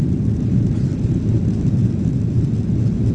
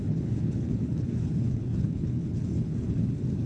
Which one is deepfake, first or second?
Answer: second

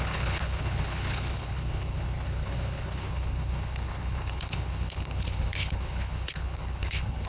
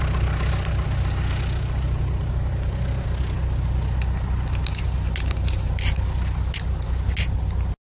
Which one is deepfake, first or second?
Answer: first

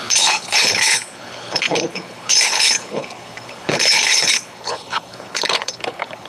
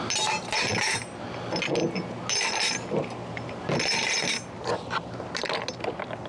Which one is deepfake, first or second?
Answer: first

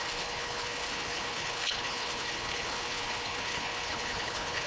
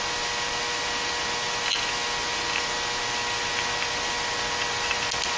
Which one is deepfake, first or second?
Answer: first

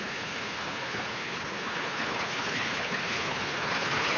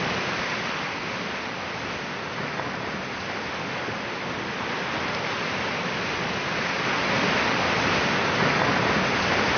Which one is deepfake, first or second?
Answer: first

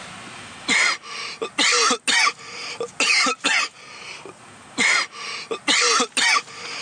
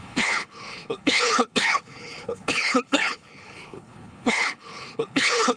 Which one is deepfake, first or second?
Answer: second